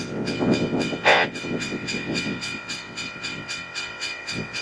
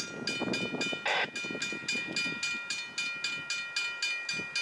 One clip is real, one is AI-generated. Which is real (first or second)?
second